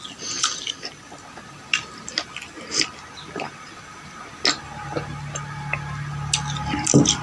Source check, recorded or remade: recorded